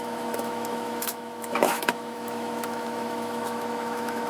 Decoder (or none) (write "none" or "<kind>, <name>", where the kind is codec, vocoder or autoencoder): autoencoder, DAC-VAE